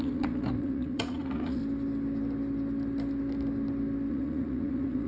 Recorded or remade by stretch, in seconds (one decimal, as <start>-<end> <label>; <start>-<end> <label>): 0.0-1.6 remade; 1.6-4.1 recorded; 4.1-5.1 remade